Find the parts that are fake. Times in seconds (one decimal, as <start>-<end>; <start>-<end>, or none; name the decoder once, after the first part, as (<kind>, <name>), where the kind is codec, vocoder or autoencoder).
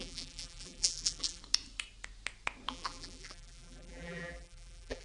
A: 0.0-1.4 (vocoder, BigVGAN v2); 2.7-5.0